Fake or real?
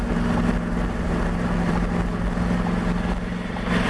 real